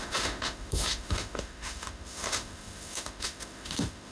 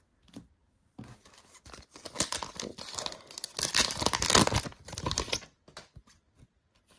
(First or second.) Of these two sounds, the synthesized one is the first